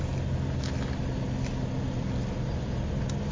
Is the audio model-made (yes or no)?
no